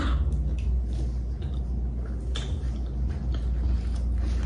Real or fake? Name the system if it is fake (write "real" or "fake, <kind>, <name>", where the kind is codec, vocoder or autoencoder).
real